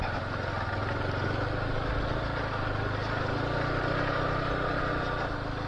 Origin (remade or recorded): recorded